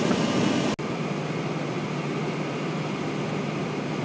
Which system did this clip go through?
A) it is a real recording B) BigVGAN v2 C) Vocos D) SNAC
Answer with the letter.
A